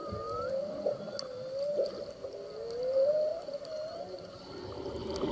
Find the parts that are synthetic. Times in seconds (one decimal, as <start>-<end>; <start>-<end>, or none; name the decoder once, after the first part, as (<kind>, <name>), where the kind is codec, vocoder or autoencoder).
0.0-0.5 (vocoder, BigVGAN v2); 3.3-4.3